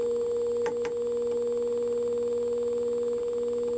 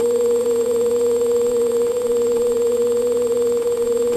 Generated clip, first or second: second